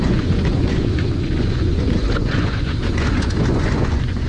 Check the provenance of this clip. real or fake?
fake